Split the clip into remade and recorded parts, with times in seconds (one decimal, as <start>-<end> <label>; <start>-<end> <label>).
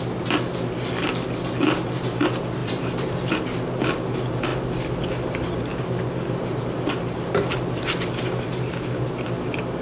0.0-2.6 recorded; 2.6-3.4 remade; 3.4-9.8 recorded